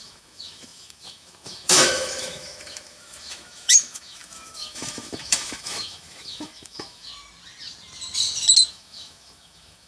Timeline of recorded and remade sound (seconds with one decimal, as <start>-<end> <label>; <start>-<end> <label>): 0.0-7.1 remade; 7.1-8.7 recorded; 8.7-9.9 remade